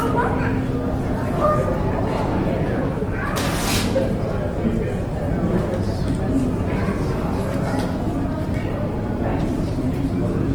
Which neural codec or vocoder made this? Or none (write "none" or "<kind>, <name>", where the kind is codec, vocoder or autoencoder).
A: none